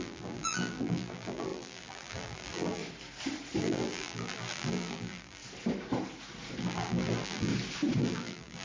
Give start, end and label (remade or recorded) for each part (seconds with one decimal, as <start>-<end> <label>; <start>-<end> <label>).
0.0-2.8 remade; 2.8-3.6 recorded; 3.6-5.4 remade; 5.4-6.6 recorded; 6.6-7.5 remade; 7.5-8.0 recorded; 8.0-8.6 remade